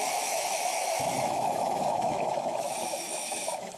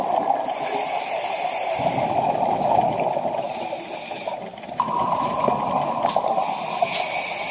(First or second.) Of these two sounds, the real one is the second